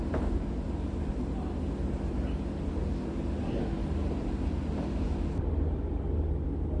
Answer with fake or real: real